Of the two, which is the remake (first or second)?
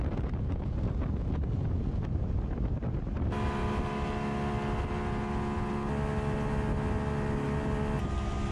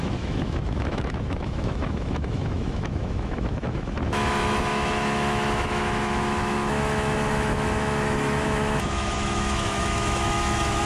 second